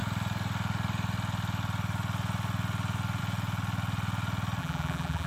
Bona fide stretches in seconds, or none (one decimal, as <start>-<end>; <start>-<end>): 0.0-4.6